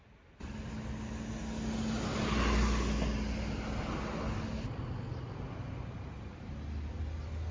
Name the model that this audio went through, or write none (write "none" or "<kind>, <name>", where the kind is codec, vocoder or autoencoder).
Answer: none